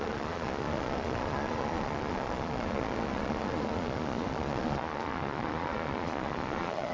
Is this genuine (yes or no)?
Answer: no